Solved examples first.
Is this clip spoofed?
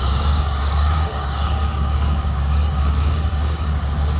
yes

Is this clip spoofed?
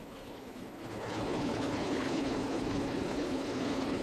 yes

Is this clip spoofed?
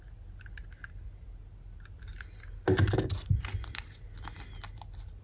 no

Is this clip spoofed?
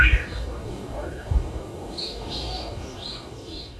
yes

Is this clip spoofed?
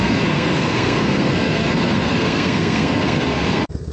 yes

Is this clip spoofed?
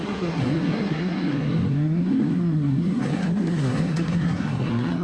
yes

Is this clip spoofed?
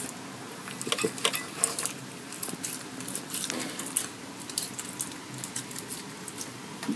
no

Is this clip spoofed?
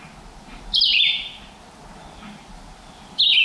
no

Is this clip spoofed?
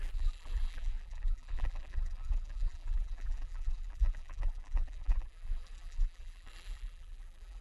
yes